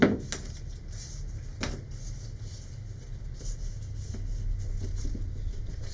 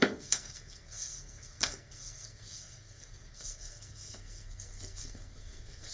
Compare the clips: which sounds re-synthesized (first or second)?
second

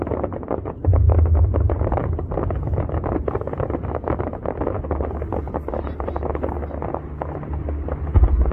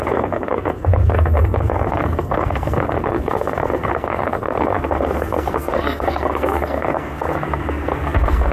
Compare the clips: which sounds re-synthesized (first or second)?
second